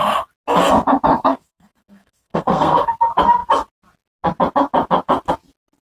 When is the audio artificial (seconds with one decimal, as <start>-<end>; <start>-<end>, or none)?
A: 1.1-2.9